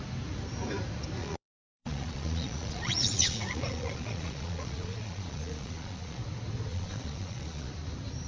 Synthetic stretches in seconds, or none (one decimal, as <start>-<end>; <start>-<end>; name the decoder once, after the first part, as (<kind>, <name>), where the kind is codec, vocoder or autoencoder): 1.2-6.2 (vocoder, Vocos); 6.7-7.7